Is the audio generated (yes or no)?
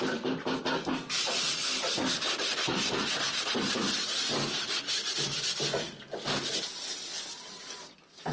no